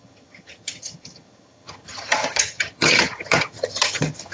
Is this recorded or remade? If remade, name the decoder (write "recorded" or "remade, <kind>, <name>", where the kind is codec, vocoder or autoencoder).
remade, vocoder, HiFi-GAN